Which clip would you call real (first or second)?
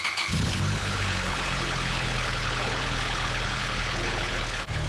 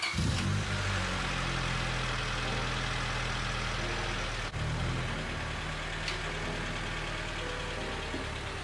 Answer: second